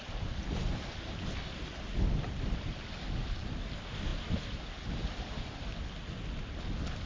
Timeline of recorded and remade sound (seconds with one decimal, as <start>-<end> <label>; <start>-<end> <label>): 0.0-7.1 recorded